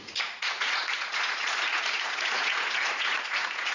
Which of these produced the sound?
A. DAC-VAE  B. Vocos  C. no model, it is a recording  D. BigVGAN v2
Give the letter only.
B